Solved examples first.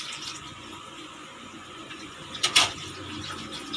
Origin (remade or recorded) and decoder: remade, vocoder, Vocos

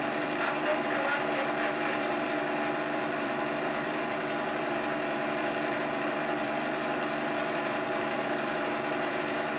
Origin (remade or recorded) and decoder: remade, vocoder, BigVGAN v2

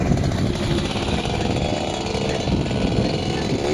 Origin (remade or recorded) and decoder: recorded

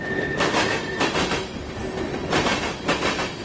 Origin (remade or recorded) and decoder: recorded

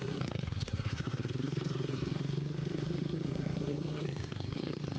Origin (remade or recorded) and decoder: remade, codec, SNAC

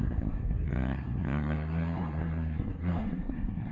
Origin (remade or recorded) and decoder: remade, codec, SNAC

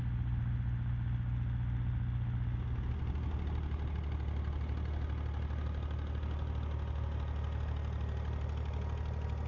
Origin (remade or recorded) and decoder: recorded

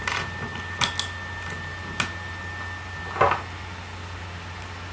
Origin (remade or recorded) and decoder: recorded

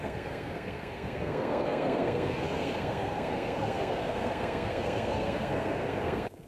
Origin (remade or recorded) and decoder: remade, codec, SNAC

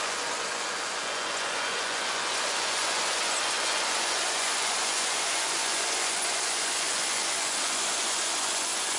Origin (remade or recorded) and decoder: remade, vocoder, Vocos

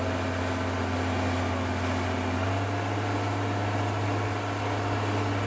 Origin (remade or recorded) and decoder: recorded